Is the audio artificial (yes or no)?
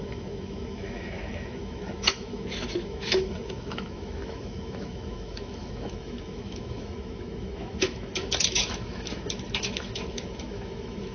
yes